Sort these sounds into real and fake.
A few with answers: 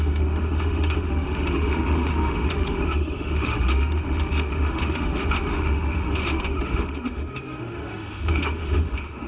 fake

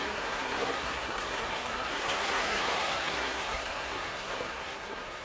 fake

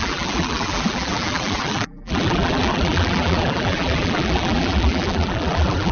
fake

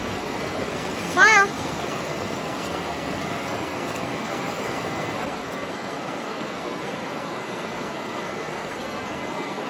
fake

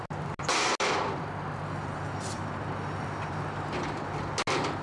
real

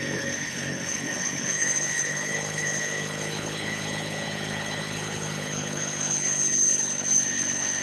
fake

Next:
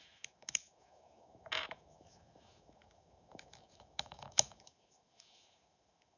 fake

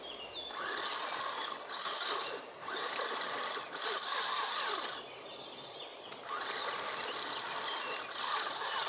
real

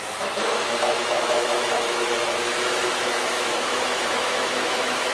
fake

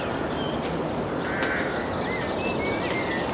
real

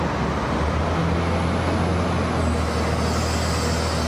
real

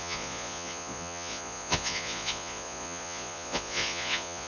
fake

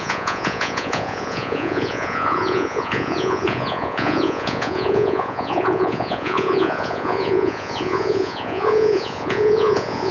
fake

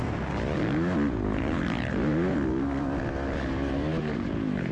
real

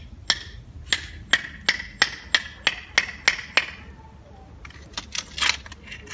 real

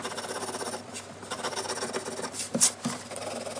real